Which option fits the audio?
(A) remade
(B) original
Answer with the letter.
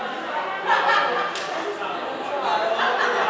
B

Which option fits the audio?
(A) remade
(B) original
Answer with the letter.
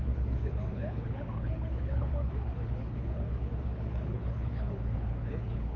A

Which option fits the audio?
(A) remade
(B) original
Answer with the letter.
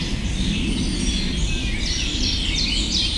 B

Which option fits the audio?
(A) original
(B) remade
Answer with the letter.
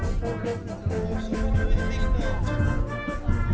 A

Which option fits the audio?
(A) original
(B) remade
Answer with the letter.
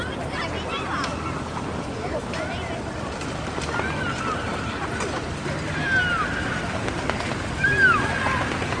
A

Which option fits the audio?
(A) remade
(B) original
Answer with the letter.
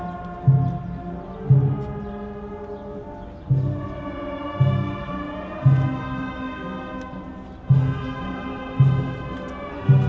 B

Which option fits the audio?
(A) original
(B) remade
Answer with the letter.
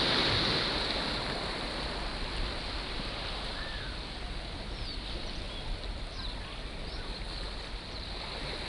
A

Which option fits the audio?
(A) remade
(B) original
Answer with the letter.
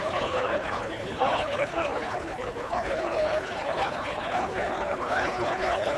A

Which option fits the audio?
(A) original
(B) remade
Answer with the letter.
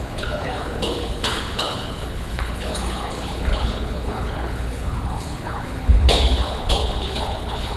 B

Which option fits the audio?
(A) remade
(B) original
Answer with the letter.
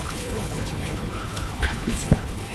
A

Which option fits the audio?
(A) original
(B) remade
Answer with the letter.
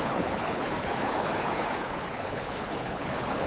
B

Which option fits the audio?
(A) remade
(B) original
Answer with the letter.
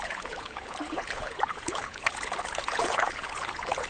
A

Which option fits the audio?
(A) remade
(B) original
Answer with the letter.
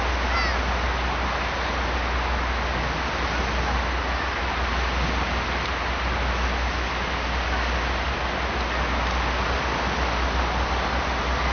B